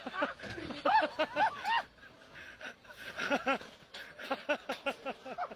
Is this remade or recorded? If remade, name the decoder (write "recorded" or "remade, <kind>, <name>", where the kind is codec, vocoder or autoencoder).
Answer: recorded